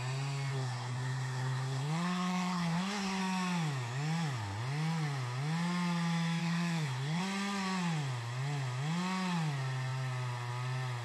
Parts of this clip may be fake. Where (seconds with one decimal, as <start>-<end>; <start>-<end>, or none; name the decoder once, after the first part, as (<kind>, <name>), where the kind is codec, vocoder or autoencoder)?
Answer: 0.5-3.2 (codec, SNAC); 6.4-7.2